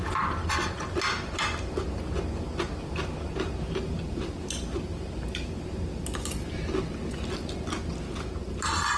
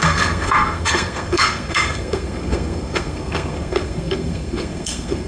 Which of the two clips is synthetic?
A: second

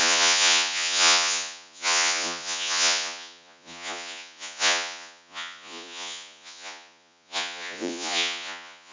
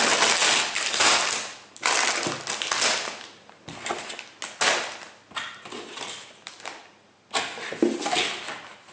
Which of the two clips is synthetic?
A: first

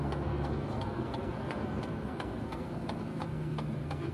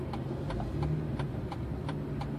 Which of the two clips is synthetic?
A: first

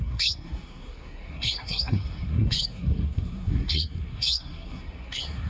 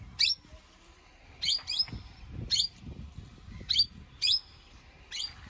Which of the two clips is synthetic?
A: first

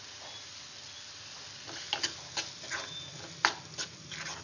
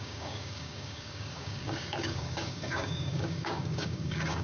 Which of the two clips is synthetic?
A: second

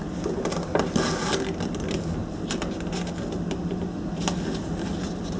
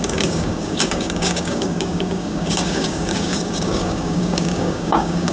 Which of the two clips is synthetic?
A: second